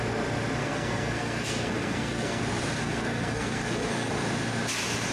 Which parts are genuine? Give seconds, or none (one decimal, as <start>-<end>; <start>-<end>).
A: 0.0-0.6; 2.4-2.8; 4.1-5.1